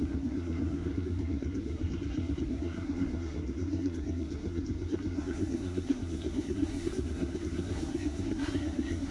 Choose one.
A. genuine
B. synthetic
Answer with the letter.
B